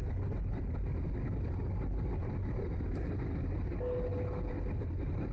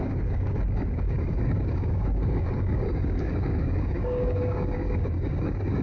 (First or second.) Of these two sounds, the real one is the first